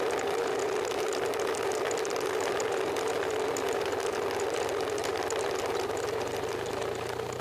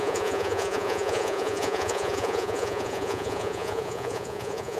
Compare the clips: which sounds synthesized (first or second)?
second